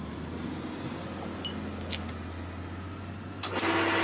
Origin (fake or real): real